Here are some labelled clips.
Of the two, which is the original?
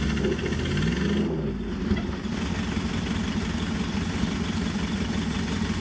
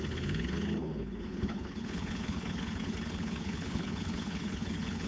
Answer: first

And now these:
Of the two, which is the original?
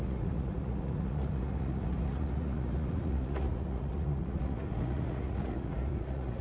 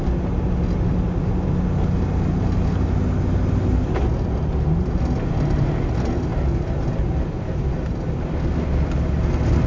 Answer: second